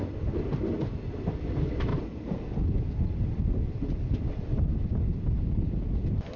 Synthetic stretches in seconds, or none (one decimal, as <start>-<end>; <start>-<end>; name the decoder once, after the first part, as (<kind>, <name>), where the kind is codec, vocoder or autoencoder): none